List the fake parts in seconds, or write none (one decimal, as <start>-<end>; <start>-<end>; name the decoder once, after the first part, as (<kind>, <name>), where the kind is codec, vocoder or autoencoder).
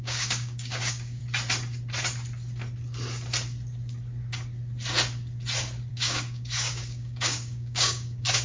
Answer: 0.0-1.2 (codec, DAC); 5.9-8.4